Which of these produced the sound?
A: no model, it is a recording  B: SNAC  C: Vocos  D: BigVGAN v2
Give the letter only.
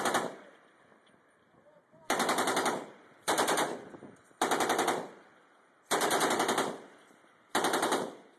D